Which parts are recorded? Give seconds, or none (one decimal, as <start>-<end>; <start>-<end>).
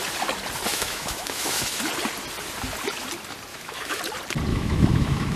0.0-0.7; 1.8-3.5; 4.0-4.5